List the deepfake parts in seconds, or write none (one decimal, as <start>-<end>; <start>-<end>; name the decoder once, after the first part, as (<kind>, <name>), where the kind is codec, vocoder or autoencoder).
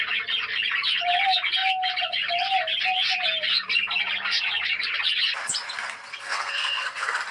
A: 6.1-7.3 (codec, SNAC)